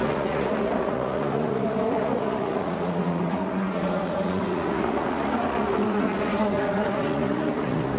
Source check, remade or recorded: remade